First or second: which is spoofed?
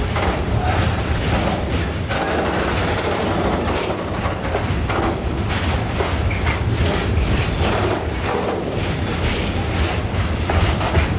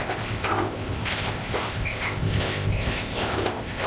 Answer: second